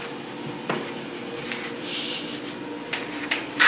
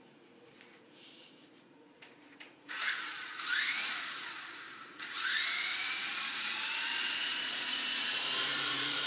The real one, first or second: first